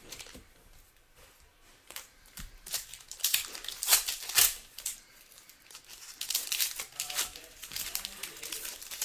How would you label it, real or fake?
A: fake